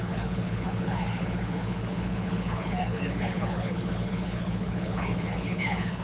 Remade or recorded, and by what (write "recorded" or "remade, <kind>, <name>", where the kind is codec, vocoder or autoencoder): remade, codec, HILCodec